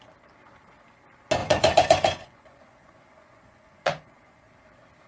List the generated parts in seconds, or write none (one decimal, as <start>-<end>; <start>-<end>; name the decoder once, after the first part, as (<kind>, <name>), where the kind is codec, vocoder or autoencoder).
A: 1.4-4.5 (vocoder, Vocos)